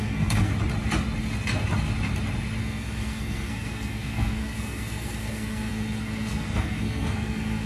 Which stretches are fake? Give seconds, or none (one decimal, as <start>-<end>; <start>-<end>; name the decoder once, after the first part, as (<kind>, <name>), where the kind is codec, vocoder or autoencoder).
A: 0.0-0.5 (codec, SNAC); 2.6-7.7